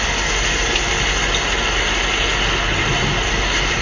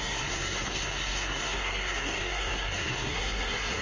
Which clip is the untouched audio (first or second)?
first